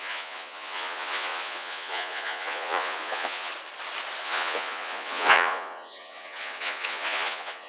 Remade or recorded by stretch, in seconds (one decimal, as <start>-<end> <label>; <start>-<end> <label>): 0.0-3.5 remade; 3.5-4.2 recorded; 4.2-7.7 remade